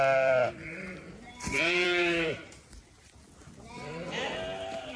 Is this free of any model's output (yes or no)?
no